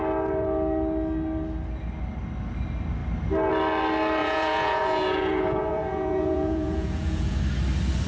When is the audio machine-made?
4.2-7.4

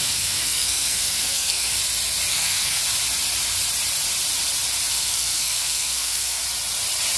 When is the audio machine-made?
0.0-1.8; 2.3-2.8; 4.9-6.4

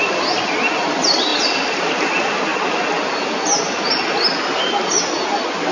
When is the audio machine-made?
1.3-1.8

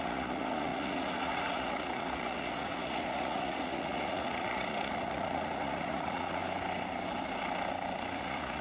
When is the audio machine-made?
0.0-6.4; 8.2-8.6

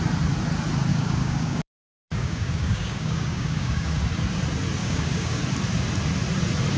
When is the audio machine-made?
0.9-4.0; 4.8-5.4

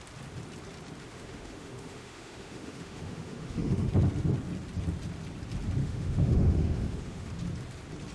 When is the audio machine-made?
1.0-3.9; 5.8-7.3